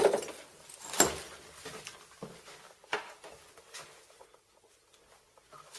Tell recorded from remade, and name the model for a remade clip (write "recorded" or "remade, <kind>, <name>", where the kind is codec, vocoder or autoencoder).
recorded